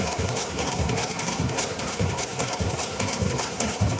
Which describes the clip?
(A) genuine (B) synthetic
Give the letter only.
B